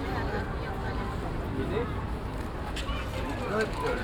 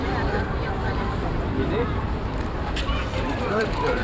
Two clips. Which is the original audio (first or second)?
first